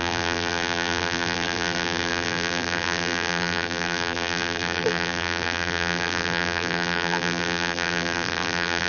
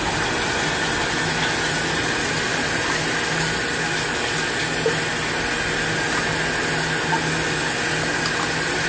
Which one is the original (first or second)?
second